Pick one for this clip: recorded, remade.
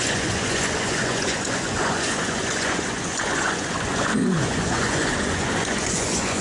remade